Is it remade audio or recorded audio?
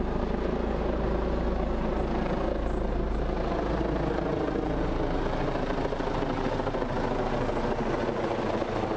recorded